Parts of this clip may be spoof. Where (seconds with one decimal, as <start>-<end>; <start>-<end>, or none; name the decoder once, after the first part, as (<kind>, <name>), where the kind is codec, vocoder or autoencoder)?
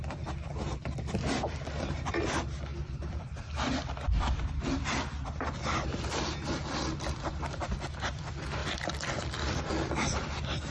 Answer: 0.0-10.7 (vocoder, BigVGAN v2)